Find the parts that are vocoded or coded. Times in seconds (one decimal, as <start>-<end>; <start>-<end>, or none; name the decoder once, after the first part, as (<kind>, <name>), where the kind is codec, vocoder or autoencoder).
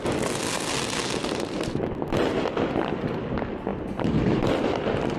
3.7-4.5 (vocoder, BigVGAN v2)